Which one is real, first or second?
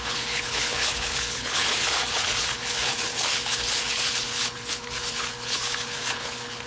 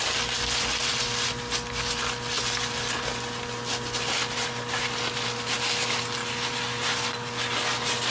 second